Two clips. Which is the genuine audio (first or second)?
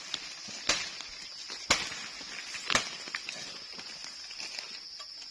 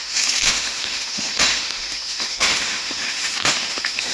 first